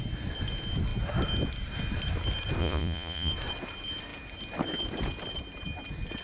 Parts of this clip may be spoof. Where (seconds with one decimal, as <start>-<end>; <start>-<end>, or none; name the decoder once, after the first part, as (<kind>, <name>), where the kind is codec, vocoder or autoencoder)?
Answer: 2.6-3.3 (vocoder, Vocos)